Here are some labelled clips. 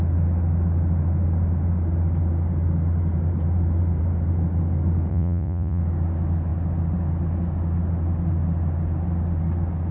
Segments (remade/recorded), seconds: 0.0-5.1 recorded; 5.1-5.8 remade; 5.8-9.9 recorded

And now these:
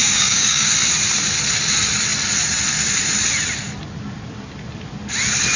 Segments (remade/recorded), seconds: 0.0-0.7 remade; 0.7-5.6 recorded

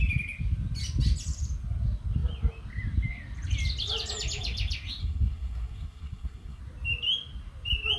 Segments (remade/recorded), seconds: 0.0-5.0 recorded; 5.0-6.6 remade; 6.6-8.0 recorded